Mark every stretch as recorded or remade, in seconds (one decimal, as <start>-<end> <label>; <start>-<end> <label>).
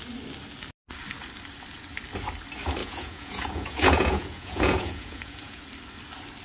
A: 0.0-2.8 recorded; 2.8-5.6 remade; 5.6-6.4 recorded